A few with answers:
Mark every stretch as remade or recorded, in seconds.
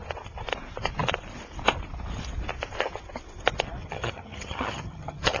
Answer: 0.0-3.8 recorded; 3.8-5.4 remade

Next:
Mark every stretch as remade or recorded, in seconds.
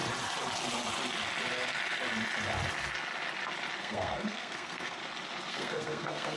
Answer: 0.0-3.8 recorded; 3.8-5.0 remade; 5.0-5.5 recorded; 5.5-6.4 remade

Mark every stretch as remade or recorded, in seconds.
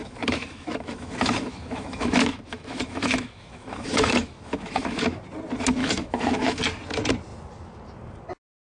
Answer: 0.0-5.2 remade; 5.2-5.8 recorded; 5.8-6.6 remade; 6.6-8.8 recorded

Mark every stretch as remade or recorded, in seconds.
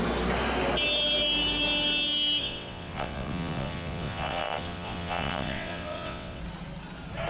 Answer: 0.0-2.4 recorded; 2.4-6.4 remade; 6.4-7.3 recorded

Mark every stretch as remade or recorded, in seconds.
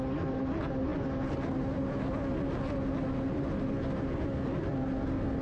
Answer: 0.0-5.4 recorded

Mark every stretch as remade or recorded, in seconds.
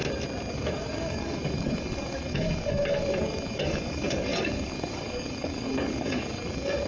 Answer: 0.0-0.5 recorded; 0.5-6.9 remade